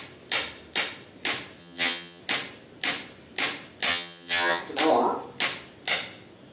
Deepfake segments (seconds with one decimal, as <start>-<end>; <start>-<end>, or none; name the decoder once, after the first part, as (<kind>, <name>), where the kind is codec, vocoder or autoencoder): 1.6-2.2 (vocoder, HiFi-GAN); 3.9-4.6